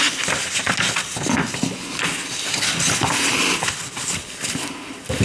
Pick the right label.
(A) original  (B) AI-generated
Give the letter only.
A